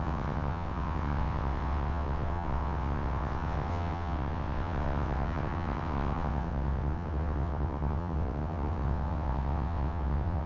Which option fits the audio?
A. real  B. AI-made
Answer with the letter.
B